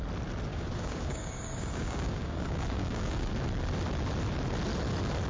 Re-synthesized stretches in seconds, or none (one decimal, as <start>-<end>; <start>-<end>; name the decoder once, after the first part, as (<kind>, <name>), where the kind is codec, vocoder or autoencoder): 0.5-3.3 (codec, DAC)